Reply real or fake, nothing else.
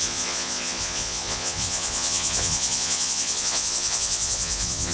fake